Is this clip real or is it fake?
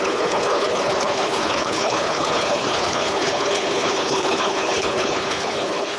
fake